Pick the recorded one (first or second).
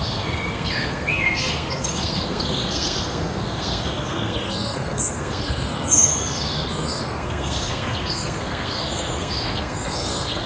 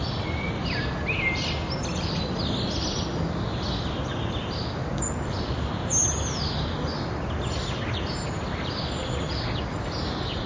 second